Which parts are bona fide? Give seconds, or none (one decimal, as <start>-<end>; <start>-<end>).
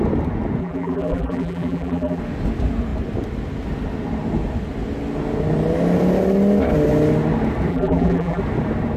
0.0-0.6; 2.2-7.7; 8.4-9.0